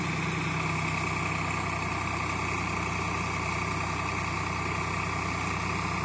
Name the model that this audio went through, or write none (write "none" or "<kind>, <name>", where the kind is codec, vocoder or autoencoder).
none